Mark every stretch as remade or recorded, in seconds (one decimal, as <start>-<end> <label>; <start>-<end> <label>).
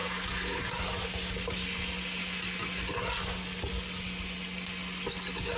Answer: 0.0-5.6 recorded